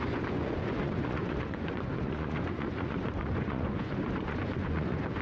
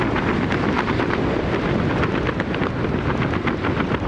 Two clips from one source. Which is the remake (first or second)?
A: first